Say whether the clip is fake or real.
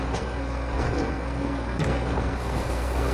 fake